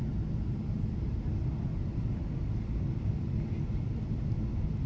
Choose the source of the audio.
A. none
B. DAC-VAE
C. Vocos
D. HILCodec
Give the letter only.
A